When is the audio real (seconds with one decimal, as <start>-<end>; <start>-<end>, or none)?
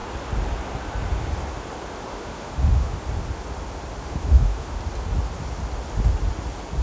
0.0-2.1; 3.0-4.1; 4.8-6.8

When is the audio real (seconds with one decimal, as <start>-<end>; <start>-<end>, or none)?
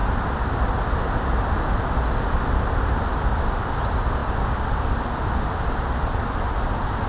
0.0-7.1